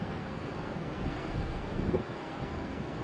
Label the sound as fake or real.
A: fake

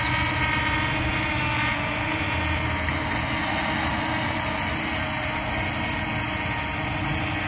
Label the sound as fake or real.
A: real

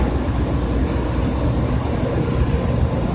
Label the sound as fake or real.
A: real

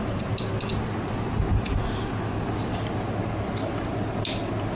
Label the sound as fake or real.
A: real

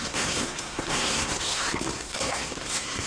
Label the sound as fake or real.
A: fake